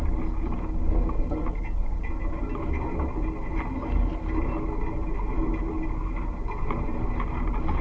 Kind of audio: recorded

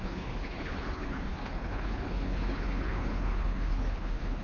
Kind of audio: remade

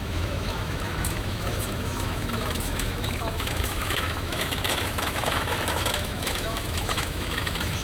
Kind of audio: remade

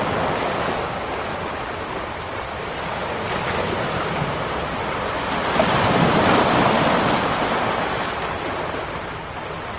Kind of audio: recorded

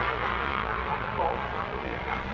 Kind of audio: remade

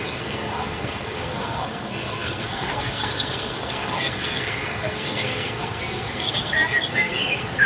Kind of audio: remade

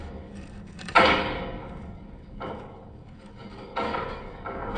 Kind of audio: remade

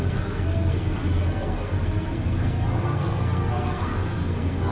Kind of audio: remade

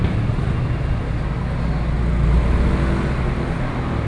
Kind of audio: recorded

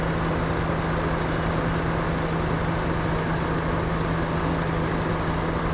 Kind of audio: recorded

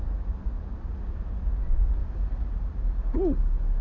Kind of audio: recorded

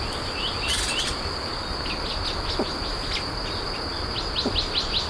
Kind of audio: recorded